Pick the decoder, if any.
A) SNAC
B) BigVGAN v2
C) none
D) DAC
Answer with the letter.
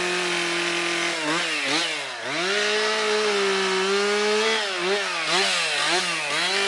C